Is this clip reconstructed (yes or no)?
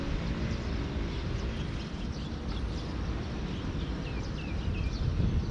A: no